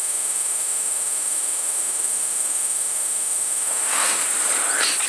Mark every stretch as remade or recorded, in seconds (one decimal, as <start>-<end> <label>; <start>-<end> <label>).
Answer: 0.0-4.2 remade; 4.2-5.1 recorded